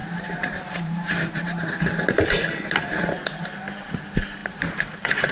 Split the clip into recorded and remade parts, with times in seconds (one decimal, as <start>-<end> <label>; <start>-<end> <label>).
0.0-3.2 remade; 3.2-4.4 recorded; 4.4-5.3 remade